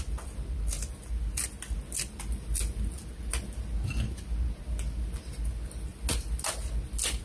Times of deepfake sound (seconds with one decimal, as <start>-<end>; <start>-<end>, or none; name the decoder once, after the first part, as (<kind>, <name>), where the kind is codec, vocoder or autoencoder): none